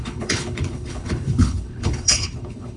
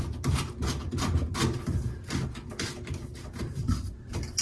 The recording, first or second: second